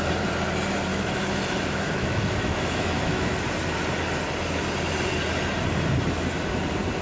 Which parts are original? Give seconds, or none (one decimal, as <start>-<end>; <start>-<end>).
0.0-0.9; 3.4-7.0